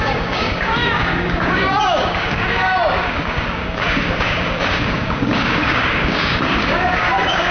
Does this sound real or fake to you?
fake